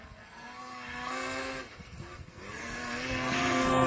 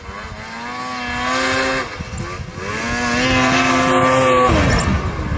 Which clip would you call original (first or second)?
second